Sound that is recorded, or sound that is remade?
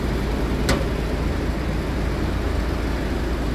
recorded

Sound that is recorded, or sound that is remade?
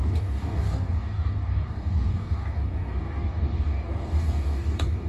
remade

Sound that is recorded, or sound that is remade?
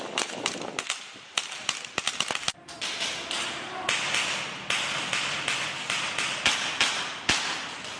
recorded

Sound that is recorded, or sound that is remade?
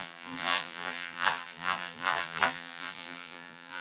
remade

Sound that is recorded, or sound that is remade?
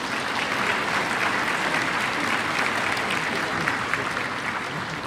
recorded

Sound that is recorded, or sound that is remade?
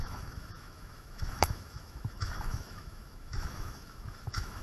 remade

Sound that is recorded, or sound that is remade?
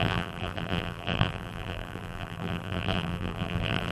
remade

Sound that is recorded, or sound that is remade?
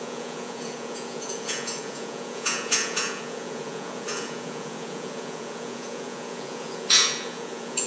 remade